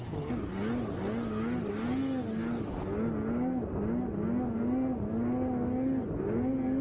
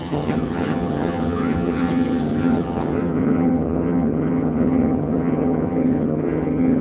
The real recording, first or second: first